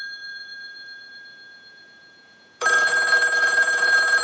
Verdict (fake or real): fake